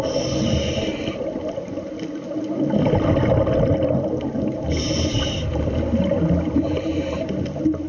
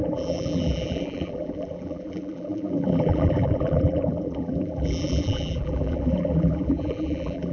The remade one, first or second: second